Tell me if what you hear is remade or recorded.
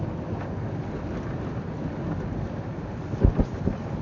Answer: recorded